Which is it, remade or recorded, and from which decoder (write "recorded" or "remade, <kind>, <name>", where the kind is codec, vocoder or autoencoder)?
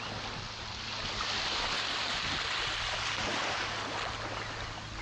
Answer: recorded